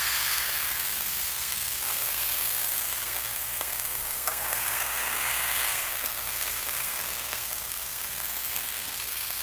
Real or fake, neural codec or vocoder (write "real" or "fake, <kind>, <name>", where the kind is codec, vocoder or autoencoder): fake, codec, SNAC